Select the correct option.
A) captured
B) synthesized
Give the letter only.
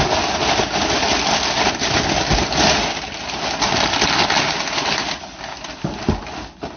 A